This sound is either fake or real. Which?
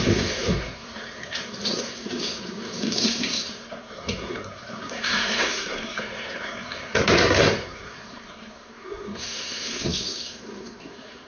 fake